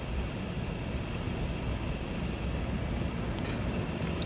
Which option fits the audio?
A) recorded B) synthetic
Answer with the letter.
A